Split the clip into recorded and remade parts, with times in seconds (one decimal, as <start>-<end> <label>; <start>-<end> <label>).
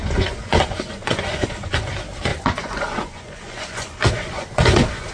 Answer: 0.0-1.9 remade; 1.9-2.3 recorded; 2.3-5.1 remade